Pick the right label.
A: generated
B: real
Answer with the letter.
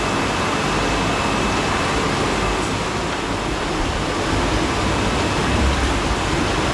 B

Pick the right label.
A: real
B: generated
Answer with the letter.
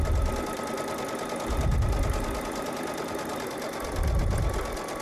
B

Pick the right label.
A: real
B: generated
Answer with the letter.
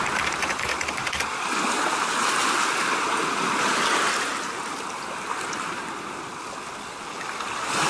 A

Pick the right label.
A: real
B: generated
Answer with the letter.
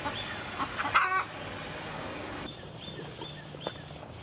A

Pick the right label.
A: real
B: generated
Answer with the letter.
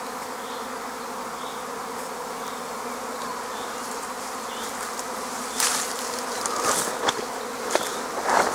A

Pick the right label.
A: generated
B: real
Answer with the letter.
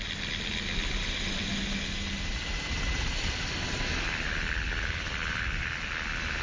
B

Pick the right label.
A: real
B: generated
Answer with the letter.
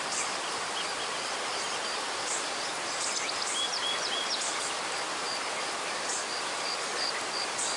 B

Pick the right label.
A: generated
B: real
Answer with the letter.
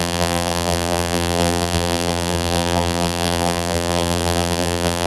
A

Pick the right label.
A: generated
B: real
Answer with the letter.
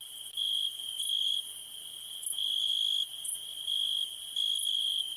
B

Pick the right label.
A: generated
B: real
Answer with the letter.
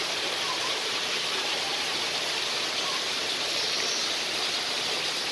A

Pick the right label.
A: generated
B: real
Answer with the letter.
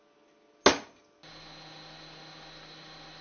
B